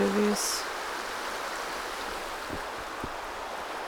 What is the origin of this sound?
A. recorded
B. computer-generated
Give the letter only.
A